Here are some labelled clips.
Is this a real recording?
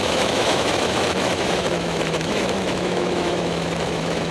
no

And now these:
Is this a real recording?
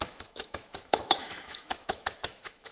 no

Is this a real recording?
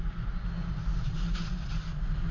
yes